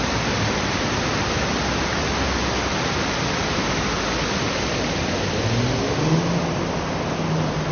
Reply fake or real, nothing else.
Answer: real